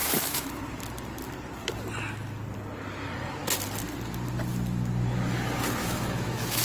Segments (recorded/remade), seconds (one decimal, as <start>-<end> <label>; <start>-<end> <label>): 0.0-0.5 remade; 0.5-5.8 recorded; 5.8-6.6 remade

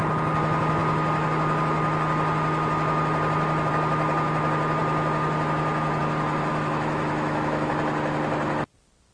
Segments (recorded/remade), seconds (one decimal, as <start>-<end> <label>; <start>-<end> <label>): 0.0-6.5 recorded; 6.5-7.7 remade; 7.7-9.1 recorded

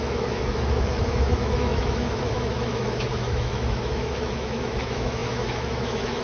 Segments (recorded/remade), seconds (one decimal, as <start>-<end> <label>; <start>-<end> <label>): 0.0-6.2 remade